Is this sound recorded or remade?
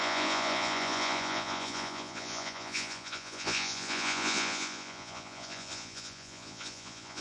remade